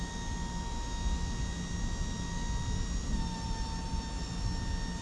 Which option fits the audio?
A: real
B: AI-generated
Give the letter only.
A